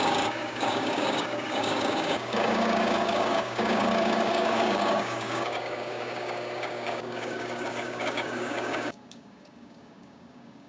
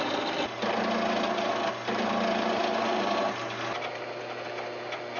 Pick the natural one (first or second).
second